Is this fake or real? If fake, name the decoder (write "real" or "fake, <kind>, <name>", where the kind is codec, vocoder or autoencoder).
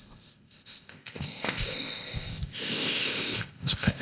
fake, codec, ZipCodec